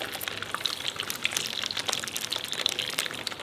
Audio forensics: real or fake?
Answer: real